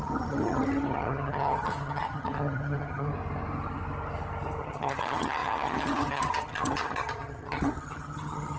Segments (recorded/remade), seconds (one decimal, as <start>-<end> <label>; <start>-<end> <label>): 0.0-3.1 remade; 3.1-4.6 recorded; 4.6-8.6 remade